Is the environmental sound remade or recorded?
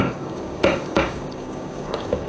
remade